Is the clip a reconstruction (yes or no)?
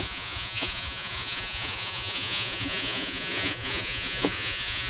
yes